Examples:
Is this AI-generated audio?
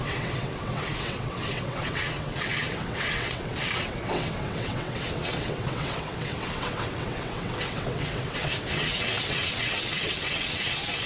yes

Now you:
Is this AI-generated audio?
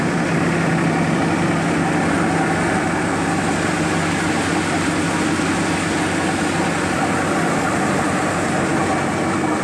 no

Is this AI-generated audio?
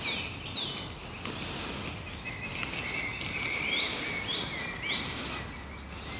no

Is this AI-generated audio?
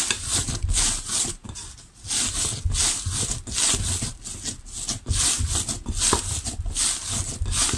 no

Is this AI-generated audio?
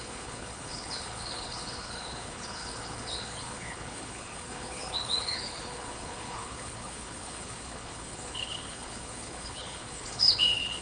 yes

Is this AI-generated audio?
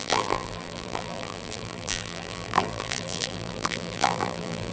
yes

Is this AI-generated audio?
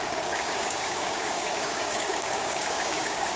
yes